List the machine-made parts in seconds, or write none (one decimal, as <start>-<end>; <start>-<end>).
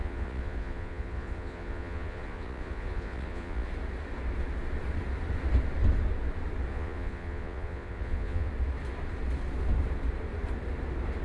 0.0-3.7; 6.7-8.5